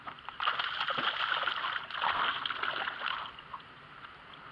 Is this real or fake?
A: real